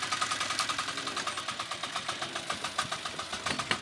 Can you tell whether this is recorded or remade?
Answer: recorded